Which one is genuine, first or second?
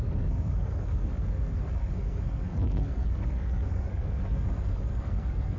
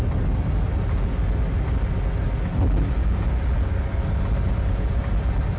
second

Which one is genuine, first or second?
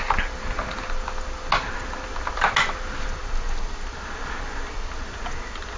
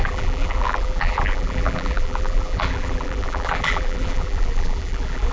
first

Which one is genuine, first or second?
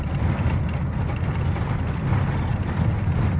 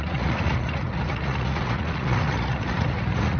first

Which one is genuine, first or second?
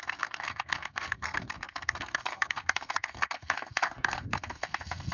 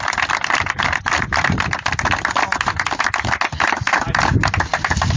second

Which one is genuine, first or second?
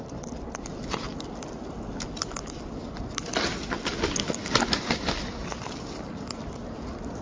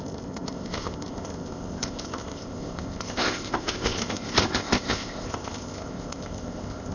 first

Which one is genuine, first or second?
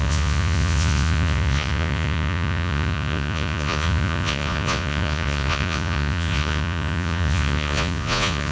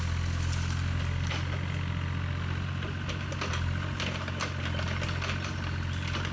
second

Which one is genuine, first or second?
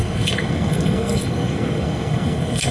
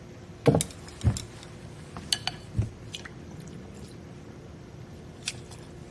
second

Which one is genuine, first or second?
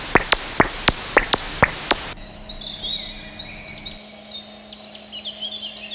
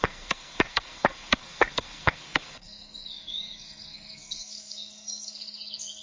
first